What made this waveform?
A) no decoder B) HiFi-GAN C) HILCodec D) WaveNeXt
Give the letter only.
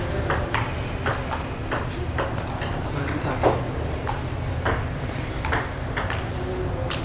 A